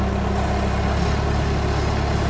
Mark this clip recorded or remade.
recorded